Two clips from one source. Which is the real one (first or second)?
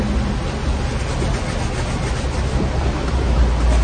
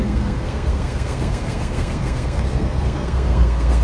first